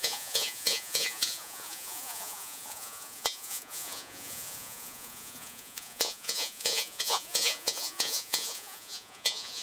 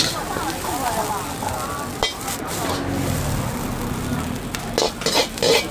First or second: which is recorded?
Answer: second